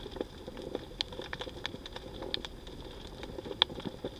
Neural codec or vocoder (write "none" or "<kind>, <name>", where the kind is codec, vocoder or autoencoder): none